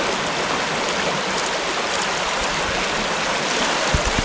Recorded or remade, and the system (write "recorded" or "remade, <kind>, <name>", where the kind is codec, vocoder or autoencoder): recorded